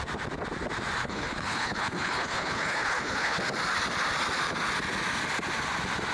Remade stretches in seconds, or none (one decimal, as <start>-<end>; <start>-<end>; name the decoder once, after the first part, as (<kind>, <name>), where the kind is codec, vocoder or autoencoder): 1.0-3.4 (codec, HILCodec)